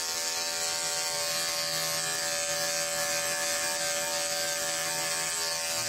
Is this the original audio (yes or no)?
yes